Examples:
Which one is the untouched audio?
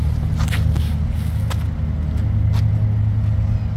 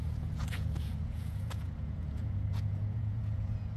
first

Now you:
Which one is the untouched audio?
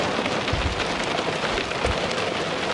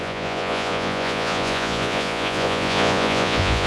first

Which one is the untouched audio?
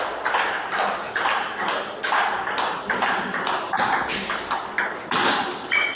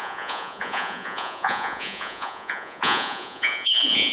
first